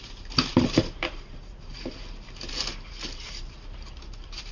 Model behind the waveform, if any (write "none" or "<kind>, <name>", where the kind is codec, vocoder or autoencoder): vocoder, BigVGAN v2